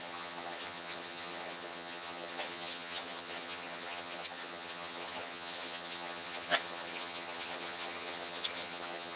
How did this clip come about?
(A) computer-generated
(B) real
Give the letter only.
A